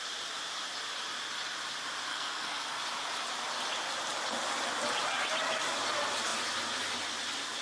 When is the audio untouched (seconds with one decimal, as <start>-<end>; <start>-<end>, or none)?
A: 0.0-2.1; 2.8-7.6